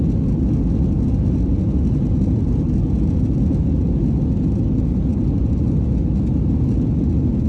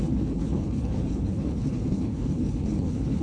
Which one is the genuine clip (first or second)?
first